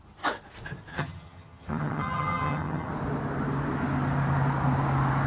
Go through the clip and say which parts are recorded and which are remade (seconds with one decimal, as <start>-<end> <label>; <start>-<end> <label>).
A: 0.0-0.9 recorded; 0.9-2.9 remade; 2.9-5.3 recorded